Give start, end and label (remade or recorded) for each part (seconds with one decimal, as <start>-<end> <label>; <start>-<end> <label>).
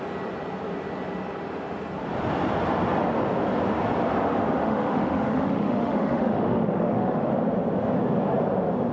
0.0-4.6 recorded; 4.6-7.3 remade; 7.3-8.9 recorded